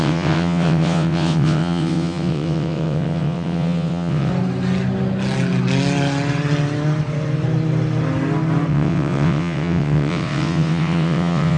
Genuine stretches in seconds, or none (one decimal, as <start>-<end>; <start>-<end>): 4.3-8.7